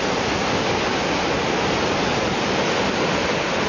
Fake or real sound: real